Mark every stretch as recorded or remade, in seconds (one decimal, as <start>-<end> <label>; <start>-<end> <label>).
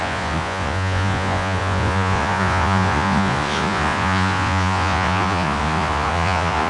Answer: 0.0-6.7 remade